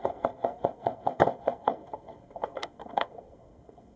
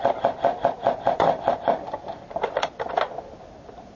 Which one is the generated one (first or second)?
first